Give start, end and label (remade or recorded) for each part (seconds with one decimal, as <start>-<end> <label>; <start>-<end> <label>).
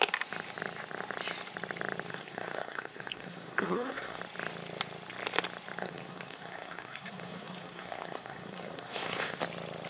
0.0-2.1 recorded; 2.1-4.2 remade; 4.2-5.8 recorded; 5.8-9.4 remade; 9.4-9.9 recorded